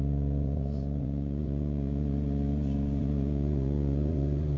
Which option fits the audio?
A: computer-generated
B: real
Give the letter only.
A